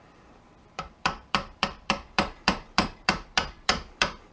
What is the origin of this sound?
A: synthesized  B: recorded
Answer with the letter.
A